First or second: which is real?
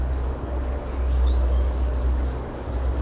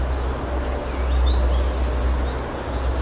second